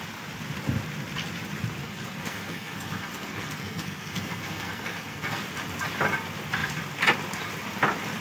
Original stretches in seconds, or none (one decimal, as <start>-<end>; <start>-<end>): 0.0-1.8; 5.4-8.2

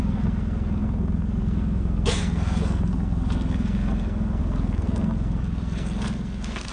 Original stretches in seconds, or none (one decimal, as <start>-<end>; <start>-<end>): none

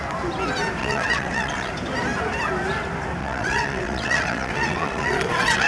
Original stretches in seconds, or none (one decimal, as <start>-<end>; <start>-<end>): 0.0-0.8; 1.7-3.2

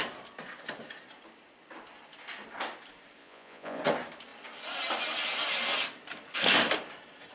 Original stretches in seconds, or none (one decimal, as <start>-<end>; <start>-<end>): 0.0-3.2; 3.8-7.3

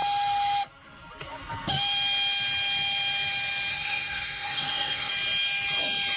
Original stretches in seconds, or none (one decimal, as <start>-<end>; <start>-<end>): 0.0-3.7; 5.1-6.2

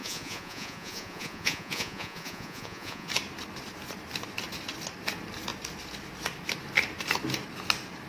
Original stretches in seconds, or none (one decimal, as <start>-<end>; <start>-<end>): 3.1-8.1